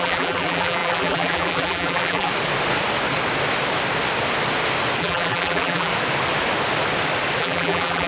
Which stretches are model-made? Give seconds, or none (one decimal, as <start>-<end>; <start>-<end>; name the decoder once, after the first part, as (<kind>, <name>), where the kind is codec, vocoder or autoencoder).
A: 0.0-2.3 (vocoder, BigVGAN v2); 5.0-5.9; 7.4-8.1